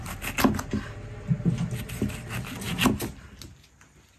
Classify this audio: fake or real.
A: real